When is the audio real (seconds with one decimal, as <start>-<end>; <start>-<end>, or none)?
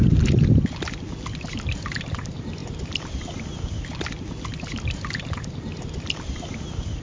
0.0-7.0